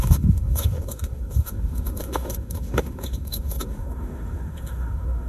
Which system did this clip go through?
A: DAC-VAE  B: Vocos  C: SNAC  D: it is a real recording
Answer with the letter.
A